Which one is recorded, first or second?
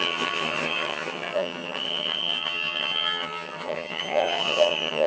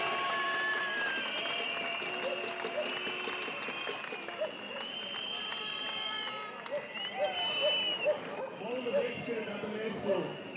second